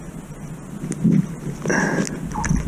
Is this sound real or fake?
real